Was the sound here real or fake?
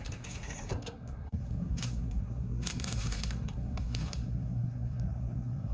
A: fake